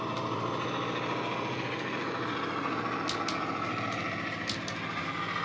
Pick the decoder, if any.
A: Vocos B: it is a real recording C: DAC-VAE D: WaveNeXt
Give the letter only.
B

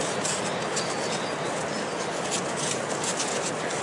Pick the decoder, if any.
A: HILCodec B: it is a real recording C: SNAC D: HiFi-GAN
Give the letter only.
B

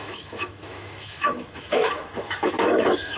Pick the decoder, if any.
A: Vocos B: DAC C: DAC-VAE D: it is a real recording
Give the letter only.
C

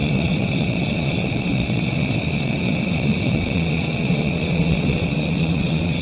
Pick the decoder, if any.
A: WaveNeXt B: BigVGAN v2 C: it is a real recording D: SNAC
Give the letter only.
A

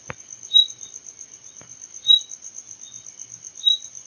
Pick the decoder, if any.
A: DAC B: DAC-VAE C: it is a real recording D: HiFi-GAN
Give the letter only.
C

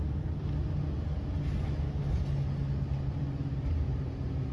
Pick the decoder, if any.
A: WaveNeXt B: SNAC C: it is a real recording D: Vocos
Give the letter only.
C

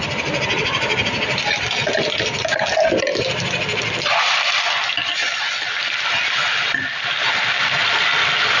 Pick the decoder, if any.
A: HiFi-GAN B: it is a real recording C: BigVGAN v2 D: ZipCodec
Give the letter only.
B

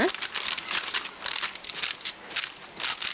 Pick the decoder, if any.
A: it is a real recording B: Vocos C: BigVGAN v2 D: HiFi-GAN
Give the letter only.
A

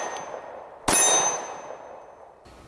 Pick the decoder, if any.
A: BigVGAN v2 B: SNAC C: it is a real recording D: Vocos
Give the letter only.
C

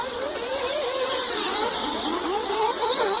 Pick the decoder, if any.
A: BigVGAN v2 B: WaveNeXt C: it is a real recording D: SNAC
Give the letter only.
B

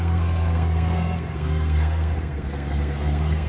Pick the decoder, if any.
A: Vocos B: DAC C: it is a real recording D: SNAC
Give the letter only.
D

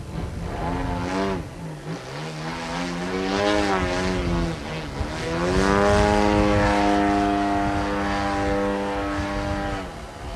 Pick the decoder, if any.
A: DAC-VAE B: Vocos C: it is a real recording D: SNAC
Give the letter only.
C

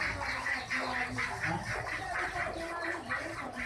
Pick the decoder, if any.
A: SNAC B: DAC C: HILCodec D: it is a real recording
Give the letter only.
D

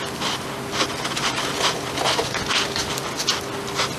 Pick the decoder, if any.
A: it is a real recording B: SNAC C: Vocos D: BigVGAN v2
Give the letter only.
A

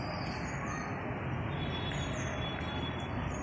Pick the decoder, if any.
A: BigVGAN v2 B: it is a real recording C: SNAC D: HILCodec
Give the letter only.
B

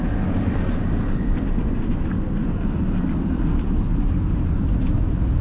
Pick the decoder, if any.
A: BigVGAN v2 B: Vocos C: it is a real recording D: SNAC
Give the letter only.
A